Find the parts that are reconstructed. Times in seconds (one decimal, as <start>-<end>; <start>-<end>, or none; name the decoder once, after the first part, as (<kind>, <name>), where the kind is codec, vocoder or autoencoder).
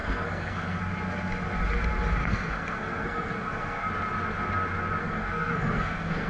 0.0-0.8 (codec, SNAC); 2.2-3.9; 5.0-6.3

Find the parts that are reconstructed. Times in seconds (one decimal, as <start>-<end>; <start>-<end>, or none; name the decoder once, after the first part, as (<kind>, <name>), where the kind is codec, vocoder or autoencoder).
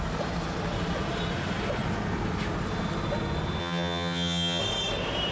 3.6-4.6 (vocoder, HiFi-GAN)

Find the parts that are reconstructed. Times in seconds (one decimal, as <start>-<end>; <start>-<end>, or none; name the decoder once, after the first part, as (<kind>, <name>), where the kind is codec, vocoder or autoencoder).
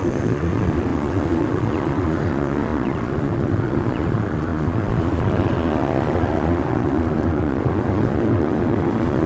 0.0-9.3 (vocoder, Vocos)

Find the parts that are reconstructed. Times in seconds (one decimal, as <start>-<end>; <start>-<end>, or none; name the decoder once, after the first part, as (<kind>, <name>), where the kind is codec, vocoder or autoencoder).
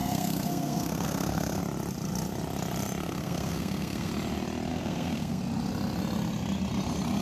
0.0-1.6 (codec, SNAC); 3.0-4.1; 4.7-5.4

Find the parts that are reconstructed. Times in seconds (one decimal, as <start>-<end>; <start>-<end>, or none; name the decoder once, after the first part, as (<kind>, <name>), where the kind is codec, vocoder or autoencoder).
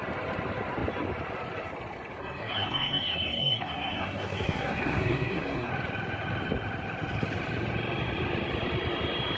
2.2-5.7 (codec, SNAC)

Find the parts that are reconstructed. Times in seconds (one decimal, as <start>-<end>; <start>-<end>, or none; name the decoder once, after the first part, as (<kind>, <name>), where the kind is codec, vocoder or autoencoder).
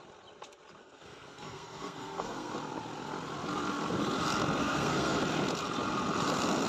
0.8-2.5 (codec, SNAC); 4.6-5.2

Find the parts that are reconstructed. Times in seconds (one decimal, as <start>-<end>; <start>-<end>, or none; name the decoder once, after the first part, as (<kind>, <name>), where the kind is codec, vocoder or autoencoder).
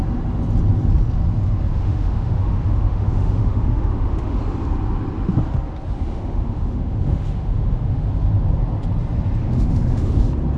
1.7-4.4 (autoencoder, DAC-VAE); 6.1-8.1; 9.4-10.2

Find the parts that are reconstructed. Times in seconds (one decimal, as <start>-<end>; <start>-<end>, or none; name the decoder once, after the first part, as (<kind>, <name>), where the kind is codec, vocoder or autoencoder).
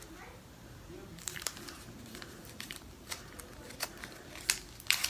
1.1-3.4 (vocoder, BigVGAN v2)